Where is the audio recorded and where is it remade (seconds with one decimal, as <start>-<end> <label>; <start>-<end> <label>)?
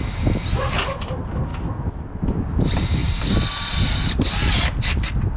0.0-5.4 recorded